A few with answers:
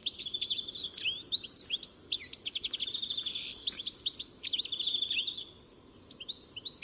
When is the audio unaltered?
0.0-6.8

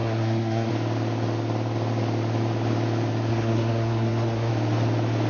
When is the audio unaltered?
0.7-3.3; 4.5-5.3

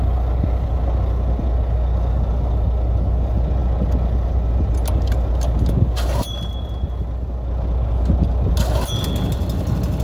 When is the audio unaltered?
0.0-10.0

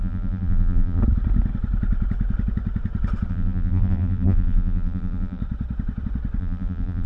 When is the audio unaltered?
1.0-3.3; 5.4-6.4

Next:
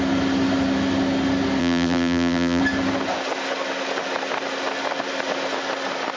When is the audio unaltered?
0.0-1.6; 2.6-6.2

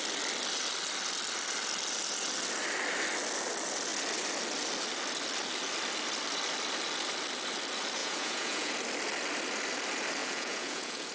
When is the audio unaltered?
0.0-8.0; 8.7-10.2